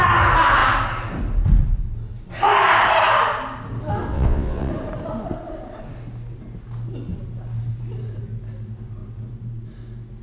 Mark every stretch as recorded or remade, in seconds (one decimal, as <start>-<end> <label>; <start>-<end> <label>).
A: 0.0-4.1 recorded; 4.1-4.7 remade; 4.7-10.2 recorded